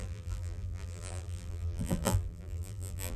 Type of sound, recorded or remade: remade